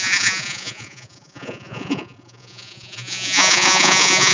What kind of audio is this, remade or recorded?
remade